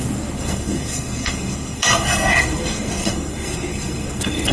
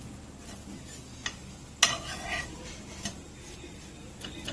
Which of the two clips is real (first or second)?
second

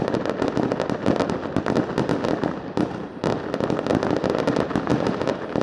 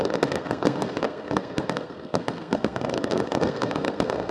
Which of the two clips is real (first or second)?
first